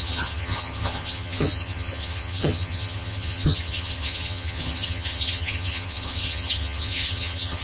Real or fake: fake